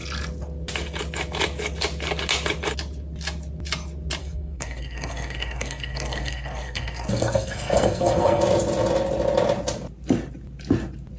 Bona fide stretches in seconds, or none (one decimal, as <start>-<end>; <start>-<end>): 0.0-4.2; 8.4-11.2